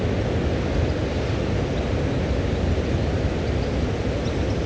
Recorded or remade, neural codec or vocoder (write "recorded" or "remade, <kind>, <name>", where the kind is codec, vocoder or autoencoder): recorded